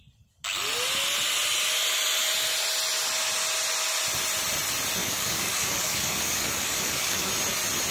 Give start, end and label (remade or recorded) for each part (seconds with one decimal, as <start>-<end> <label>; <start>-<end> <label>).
0.0-5.0 recorded; 5.0-7.3 remade; 7.3-7.9 recorded